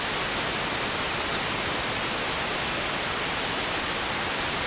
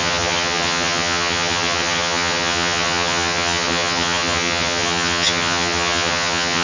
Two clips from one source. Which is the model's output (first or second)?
second